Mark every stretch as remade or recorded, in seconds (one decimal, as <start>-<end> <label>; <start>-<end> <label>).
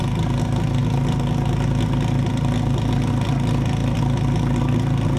0.0-5.2 recorded